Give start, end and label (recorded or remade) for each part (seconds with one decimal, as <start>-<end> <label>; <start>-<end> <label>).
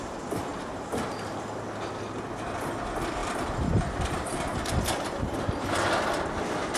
0.0-0.5 recorded; 0.5-1.9 remade; 1.9-3.2 recorded; 3.2-4.7 remade; 4.7-6.8 recorded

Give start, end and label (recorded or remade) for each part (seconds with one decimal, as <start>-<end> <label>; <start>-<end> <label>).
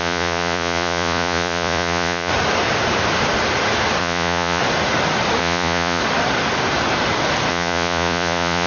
0.0-2.3 remade; 2.3-4.0 recorded; 4.0-4.6 remade; 4.6-5.4 recorded; 5.4-6.0 remade; 6.0-7.5 recorded; 7.5-8.7 remade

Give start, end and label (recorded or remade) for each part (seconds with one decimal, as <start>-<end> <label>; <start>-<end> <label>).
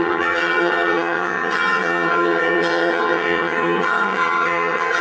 0.0-5.0 remade